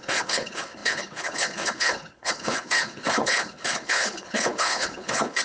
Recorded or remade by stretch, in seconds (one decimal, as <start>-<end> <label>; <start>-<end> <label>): 0.0-5.4 remade

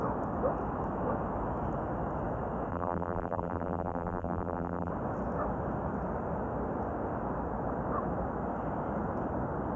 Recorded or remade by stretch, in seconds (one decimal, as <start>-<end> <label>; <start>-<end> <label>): 0.0-2.7 recorded; 2.7-4.9 remade; 4.9-9.8 recorded

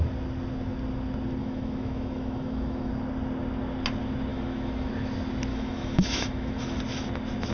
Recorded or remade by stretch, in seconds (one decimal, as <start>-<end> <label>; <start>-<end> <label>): 0.0-1.4 recorded; 1.4-2.9 remade; 2.9-4.3 recorded; 4.3-4.9 remade; 4.9-5.5 recorded; 5.5-6.8 remade; 6.8-7.5 recorded

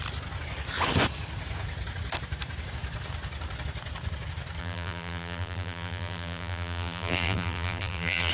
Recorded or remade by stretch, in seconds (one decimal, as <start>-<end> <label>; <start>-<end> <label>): 0.0-4.6 recorded; 4.6-8.3 remade